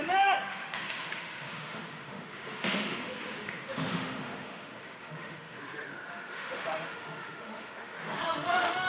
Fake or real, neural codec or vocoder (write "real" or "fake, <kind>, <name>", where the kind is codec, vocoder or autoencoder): fake, autoencoder, DAC-VAE